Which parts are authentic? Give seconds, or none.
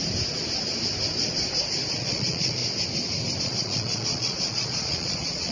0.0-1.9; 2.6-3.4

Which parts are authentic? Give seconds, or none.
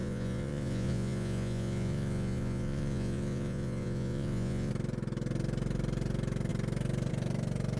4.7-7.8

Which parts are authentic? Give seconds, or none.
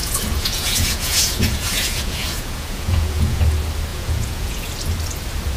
3.4-3.9; 4.7-5.6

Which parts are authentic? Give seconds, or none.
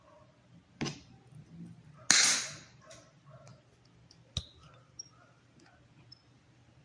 0.0-6.8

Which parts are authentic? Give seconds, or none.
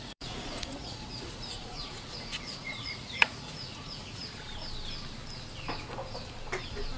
4.2-7.0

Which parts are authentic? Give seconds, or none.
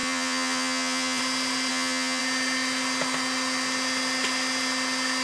1.2-1.7; 2.2-5.2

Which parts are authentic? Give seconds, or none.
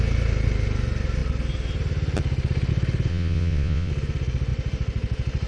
0.0-3.1; 3.9-5.5